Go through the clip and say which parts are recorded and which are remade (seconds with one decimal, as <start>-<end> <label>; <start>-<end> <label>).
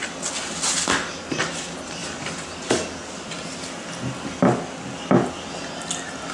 0.0-6.3 recorded